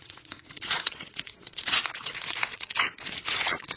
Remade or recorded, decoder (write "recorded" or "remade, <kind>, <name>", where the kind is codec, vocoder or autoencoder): remade, vocoder, Vocos